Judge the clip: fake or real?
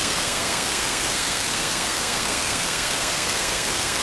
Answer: fake